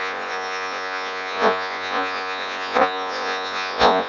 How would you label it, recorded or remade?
remade